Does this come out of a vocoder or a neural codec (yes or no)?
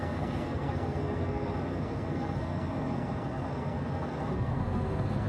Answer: yes